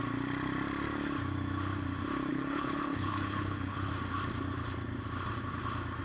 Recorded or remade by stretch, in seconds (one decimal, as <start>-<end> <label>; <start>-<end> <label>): 0.0-2.3 recorded; 2.3-3.9 remade; 3.9-6.0 recorded